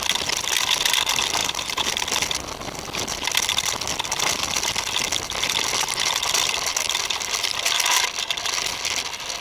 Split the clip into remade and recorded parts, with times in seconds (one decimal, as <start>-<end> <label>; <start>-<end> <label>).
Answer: 0.0-1.4 recorded; 1.4-1.9 remade; 1.9-9.4 recorded